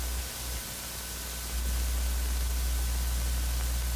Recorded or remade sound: recorded